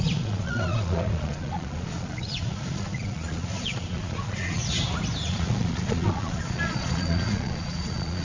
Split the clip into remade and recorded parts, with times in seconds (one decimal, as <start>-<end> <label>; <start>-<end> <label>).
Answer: 0.0-4.6 remade; 4.6-5.3 recorded; 5.3-8.2 remade